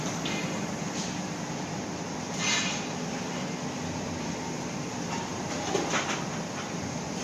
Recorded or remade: recorded